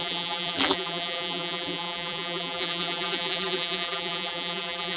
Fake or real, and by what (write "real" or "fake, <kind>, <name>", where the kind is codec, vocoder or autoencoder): fake, vocoder, BigVGAN v2